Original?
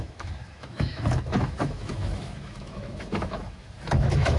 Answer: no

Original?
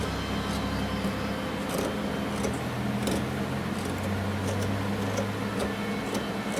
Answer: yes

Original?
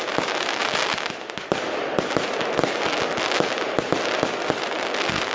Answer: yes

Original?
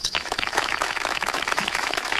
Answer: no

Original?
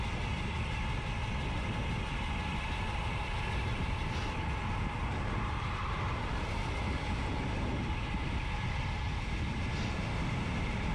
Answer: yes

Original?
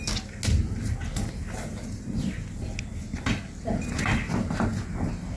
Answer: yes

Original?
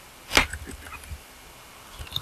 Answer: yes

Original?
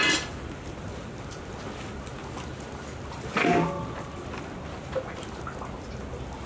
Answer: yes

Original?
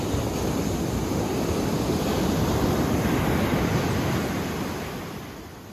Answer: yes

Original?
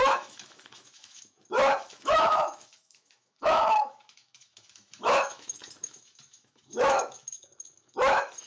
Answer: no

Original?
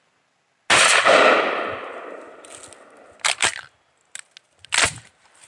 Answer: yes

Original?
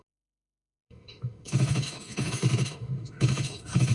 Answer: no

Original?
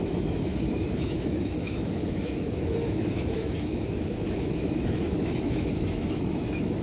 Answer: no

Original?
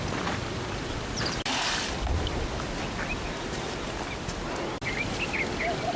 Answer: yes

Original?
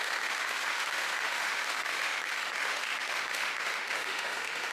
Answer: no